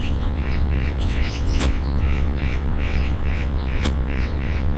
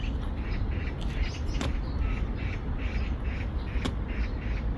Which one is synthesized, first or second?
first